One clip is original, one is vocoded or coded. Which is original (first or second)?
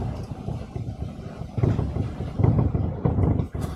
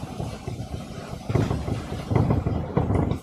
first